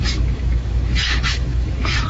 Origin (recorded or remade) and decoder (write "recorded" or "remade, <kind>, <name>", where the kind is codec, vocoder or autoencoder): remade, autoencoder, DAC-VAE